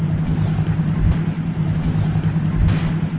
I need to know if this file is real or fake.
real